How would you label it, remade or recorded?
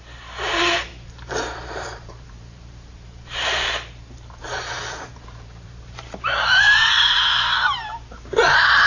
remade